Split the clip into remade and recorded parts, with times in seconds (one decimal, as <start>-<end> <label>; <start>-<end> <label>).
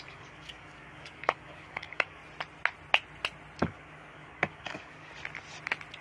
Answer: 0.0-2.2 remade; 2.2-3.6 recorded; 3.6-5.1 remade; 5.1-6.0 recorded